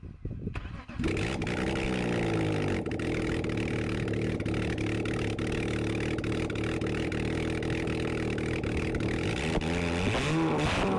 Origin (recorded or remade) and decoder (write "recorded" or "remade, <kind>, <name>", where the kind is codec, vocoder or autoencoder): recorded